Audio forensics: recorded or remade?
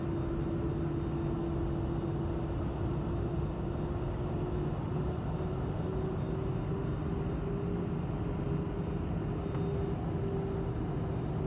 recorded